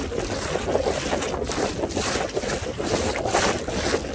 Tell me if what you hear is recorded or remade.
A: recorded